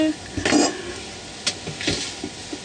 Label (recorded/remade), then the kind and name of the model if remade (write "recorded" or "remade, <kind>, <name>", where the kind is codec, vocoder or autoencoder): recorded